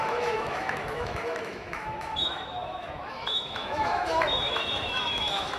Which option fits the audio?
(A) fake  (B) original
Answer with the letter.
A